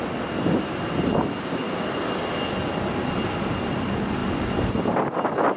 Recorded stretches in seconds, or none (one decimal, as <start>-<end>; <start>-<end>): 0.0-5.6